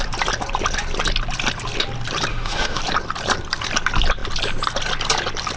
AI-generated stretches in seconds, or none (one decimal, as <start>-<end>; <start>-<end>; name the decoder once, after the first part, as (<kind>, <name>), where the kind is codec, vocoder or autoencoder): 2.3-2.8 (autoencoder, DAC-VAE)